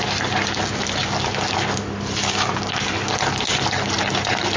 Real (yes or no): yes